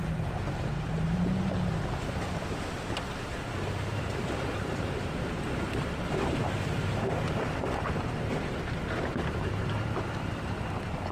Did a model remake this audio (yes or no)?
yes